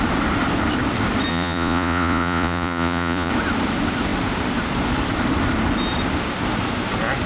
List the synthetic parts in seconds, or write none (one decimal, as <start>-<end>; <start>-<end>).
1.3-3.3